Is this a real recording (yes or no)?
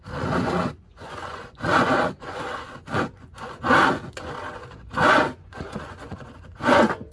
no